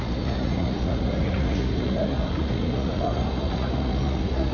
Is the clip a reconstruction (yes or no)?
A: yes